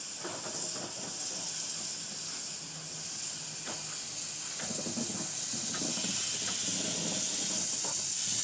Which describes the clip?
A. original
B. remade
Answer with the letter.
A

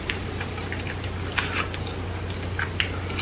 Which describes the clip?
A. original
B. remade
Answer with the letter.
A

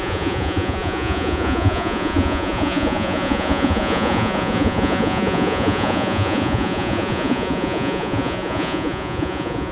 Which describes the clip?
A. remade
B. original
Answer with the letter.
A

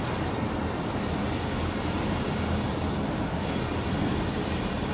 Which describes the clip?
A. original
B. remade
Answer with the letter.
A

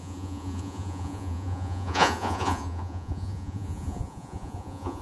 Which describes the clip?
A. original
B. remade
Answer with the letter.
B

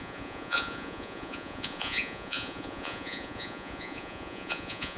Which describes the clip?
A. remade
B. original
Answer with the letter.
A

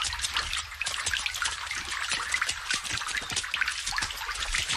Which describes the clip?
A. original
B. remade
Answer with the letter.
A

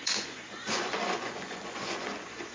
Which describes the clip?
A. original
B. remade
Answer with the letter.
B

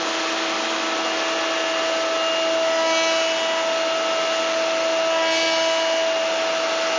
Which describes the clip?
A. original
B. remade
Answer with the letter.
A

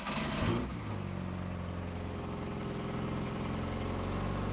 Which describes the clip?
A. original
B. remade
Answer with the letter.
A